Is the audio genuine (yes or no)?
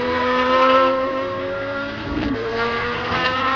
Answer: no